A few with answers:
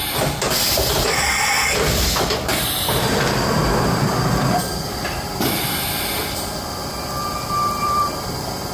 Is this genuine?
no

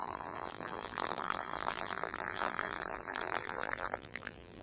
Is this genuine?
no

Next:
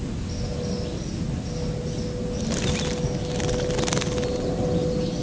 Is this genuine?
yes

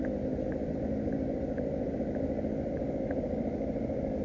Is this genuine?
yes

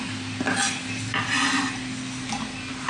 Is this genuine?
yes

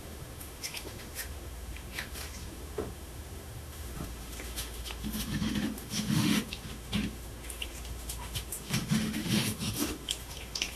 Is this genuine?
no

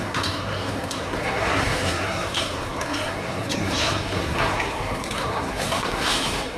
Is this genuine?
no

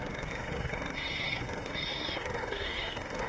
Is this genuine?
no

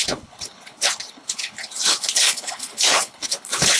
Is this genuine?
no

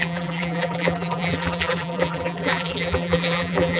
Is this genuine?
no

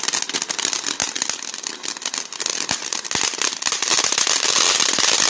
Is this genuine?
yes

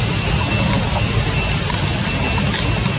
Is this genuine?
yes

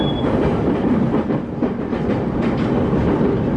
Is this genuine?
no